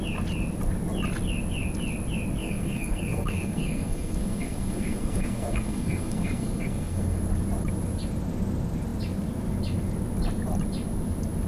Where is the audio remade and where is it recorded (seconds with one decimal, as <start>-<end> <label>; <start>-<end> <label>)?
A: 0.0-2.4 recorded; 2.4-7.2 remade; 7.2-11.5 recorded